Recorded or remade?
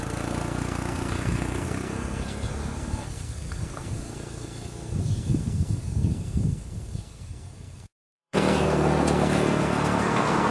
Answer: remade